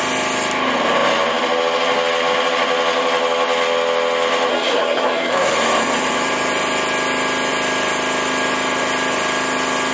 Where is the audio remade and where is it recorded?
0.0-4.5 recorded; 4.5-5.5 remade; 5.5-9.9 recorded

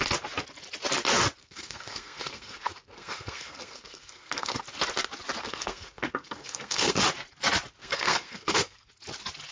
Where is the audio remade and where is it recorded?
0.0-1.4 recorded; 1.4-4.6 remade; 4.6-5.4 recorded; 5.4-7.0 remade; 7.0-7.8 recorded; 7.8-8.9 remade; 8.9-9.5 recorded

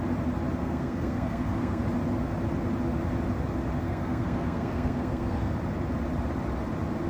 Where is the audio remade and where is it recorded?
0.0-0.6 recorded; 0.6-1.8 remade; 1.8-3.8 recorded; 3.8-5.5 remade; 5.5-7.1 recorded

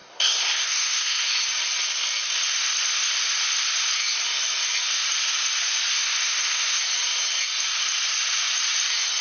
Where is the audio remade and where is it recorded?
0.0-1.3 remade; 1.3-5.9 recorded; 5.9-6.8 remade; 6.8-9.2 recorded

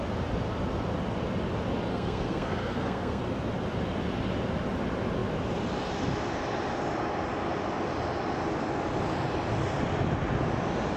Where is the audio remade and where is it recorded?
0.0-1.9 recorded; 1.9-3.2 remade; 3.2-11.0 recorded